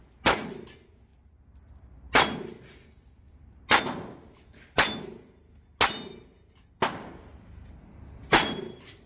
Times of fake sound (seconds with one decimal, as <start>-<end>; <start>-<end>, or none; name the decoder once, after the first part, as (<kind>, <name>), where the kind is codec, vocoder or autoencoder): none